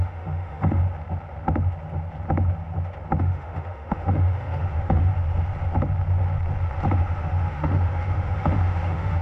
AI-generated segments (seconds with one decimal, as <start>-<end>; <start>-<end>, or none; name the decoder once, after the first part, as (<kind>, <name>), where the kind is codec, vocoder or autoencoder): 0.0-0.8 (autoencoder, DAC-VAE); 3.2-5.1; 7.0-9.2

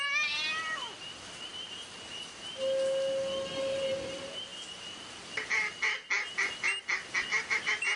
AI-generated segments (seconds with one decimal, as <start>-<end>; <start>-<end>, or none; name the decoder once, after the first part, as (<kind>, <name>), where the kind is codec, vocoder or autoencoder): none

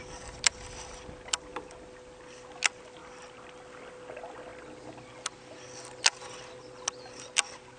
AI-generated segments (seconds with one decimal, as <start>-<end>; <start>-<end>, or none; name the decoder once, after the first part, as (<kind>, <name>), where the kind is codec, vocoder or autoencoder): none

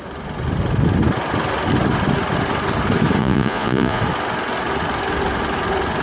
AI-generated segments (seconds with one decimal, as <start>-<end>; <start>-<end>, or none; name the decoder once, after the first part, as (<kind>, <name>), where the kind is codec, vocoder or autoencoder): 3.2-4.0 (vocoder, Vocos)

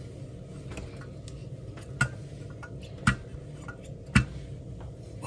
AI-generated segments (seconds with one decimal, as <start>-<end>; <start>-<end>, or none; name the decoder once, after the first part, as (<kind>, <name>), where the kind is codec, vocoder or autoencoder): none

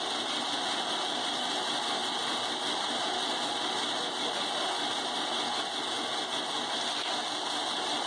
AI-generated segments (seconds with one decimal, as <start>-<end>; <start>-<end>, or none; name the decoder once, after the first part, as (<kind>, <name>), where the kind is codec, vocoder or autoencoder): none

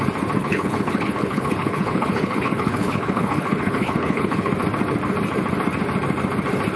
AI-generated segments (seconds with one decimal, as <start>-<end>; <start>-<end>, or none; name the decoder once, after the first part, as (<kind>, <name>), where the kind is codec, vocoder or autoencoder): 0.4-4.5 (codec, HILCodec)

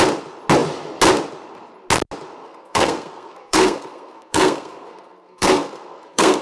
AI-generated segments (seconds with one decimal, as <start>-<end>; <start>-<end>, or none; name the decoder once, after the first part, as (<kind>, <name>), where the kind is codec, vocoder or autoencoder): 2.4-6.4 (codec, SNAC)